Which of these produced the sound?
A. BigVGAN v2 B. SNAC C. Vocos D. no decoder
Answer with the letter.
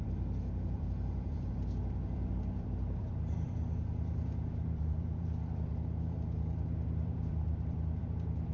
A